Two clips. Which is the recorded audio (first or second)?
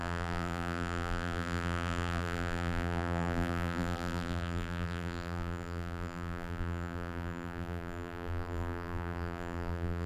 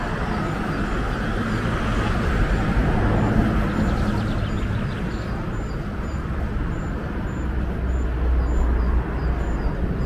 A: second